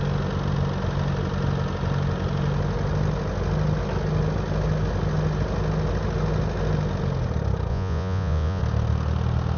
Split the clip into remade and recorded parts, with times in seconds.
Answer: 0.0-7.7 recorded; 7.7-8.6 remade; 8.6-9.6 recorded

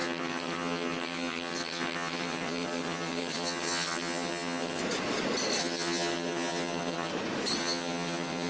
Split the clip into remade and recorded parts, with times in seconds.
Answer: 0.0-4.8 remade; 4.8-5.6 recorded; 5.6-7.1 remade; 7.1-7.6 recorded; 7.6-8.5 remade

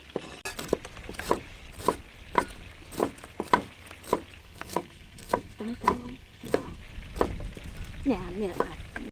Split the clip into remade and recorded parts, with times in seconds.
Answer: 0.0-4.4 recorded; 4.4-6.8 remade; 6.8-9.1 recorded

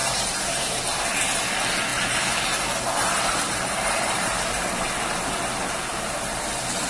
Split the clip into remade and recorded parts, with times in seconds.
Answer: 0.0-0.6 remade; 0.6-1.9 recorded; 1.9-4.7 remade; 4.7-6.9 recorded

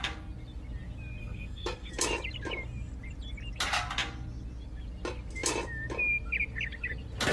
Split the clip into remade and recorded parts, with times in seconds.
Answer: 0.0-1.2 recorded; 1.2-1.9 remade; 1.9-7.3 recorded

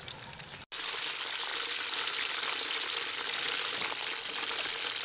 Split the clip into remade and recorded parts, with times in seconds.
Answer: 0.0-5.0 recorded